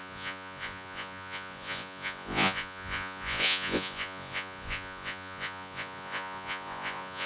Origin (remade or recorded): remade